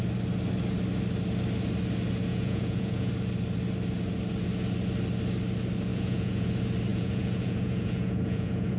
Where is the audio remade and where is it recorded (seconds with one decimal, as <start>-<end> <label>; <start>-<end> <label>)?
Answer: 0.0-2.3 recorded; 2.3-3.1 remade; 3.1-5.9 recorded; 5.9-6.5 remade; 6.5-6.9 recorded; 6.9-8.8 remade